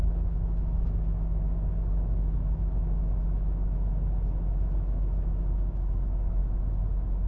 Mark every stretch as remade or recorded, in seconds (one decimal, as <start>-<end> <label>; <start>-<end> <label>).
0.0-6.4 remade; 6.4-7.3 recorded